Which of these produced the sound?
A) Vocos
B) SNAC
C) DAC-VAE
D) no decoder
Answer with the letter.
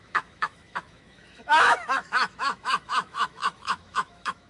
C